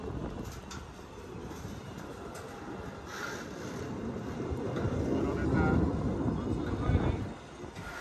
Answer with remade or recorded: recorded